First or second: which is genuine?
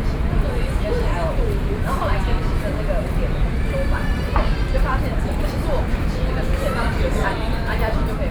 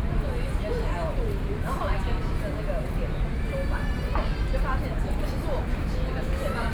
second